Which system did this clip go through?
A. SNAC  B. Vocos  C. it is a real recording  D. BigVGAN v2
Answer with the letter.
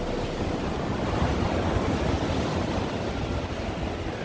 C